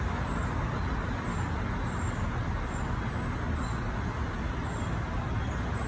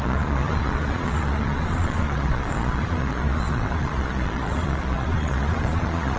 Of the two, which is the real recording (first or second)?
first